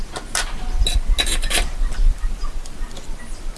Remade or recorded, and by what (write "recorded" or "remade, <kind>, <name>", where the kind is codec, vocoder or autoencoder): recorded